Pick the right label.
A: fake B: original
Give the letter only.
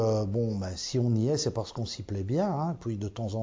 B